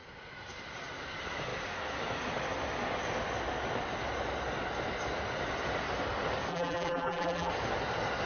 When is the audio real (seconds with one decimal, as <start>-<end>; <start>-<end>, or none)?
0.0-6.5; 7.5-8.3